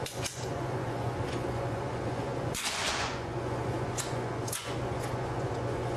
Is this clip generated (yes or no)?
yes